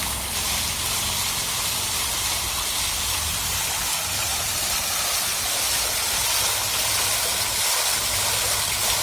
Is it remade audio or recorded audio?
recorded